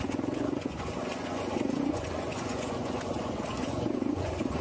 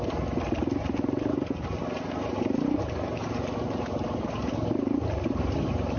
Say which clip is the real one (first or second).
second